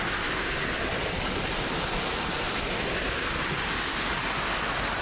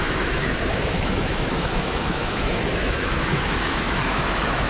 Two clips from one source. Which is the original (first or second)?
first